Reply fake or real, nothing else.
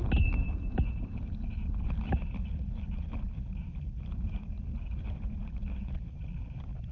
real